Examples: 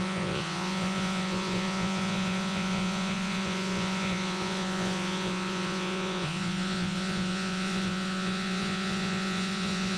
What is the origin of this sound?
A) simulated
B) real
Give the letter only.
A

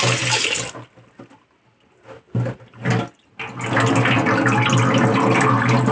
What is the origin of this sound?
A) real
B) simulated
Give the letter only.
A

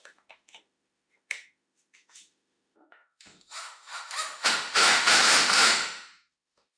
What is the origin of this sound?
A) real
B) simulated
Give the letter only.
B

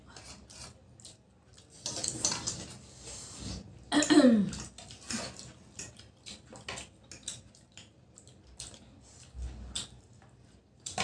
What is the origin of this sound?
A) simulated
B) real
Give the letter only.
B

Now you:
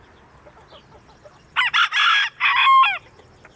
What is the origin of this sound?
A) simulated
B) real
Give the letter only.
B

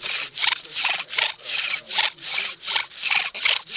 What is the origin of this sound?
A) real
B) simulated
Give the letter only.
A